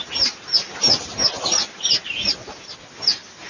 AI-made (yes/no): no